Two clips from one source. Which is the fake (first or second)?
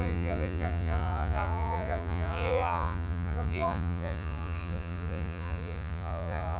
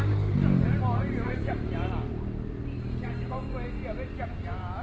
first